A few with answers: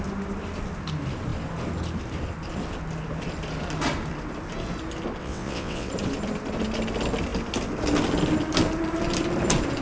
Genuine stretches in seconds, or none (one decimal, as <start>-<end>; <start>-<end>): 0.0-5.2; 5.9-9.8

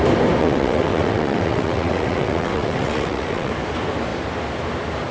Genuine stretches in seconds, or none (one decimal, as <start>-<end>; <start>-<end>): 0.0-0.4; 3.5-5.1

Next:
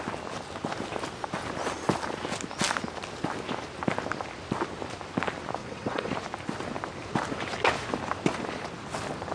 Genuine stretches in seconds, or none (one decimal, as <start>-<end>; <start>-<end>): 0.0-5.6; 6.1-9.3

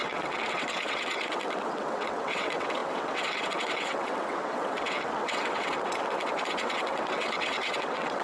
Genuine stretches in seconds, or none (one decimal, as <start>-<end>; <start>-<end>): none

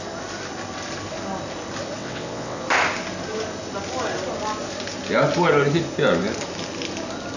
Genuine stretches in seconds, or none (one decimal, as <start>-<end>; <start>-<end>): 0.0-2.0; 2.6-7.4

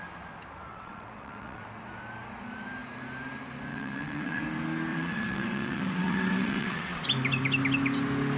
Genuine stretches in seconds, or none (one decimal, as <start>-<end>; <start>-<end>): 0.0-0.7; 1.6-3.7; 4.4-4.9; 7.0-8.4